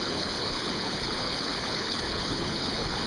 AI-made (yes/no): yes